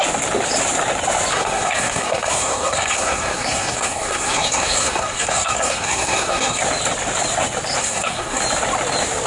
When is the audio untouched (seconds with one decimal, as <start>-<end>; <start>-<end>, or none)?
0.0-1.3; 6.6-7.8; 8.4-9.3